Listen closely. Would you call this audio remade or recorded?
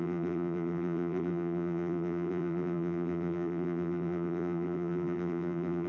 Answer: remade